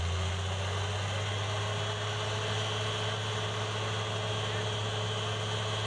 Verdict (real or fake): real